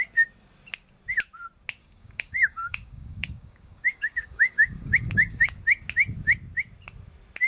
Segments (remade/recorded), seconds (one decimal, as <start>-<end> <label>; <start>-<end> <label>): 0.0-1.8 recorded; 1.8-5.6 remade; 5.6-7.5 recorded